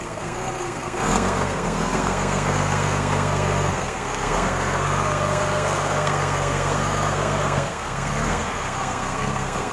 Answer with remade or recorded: remade